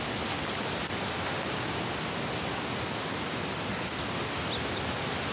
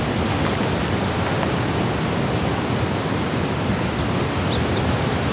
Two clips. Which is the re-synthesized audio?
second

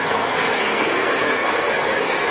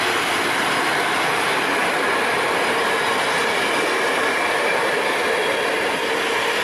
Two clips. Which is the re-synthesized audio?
first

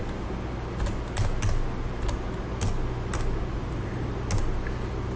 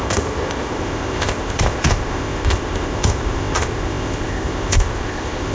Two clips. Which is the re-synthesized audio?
second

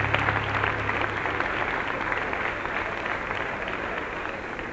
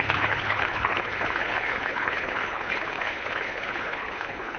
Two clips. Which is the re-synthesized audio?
second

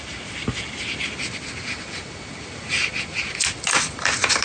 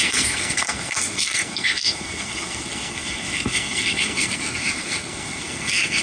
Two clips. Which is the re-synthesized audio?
second